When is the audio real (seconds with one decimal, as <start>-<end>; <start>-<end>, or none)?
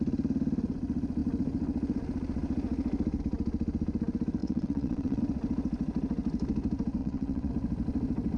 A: 0.0-4.4; 5.2-7.0; 7.5-8.4